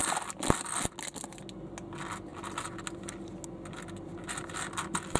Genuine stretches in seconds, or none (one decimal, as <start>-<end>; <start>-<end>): 0.0-5.2